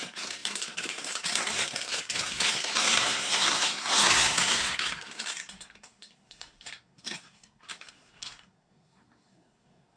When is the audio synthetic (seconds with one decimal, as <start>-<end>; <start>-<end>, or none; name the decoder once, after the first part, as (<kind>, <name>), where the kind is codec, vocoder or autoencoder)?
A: 0.0-10.0 (codec, SNAC)